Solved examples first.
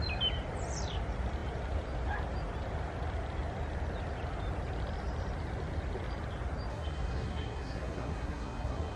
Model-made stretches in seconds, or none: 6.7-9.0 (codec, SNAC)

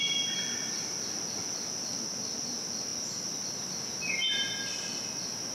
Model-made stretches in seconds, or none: none

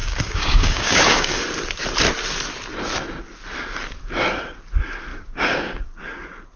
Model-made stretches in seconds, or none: 0.0-1.4 (codec, DAC); 5.1-5.8

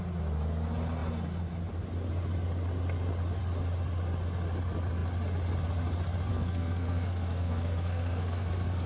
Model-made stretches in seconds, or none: 6.3-8.9 (codec, SNAC)

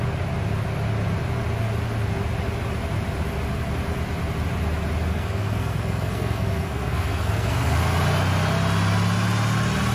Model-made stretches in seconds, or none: 5.1-7.8 (codec, SNAC)